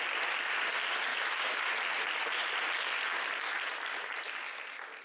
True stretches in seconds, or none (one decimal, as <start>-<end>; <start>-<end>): 0.0-1.1; 1.7-5.0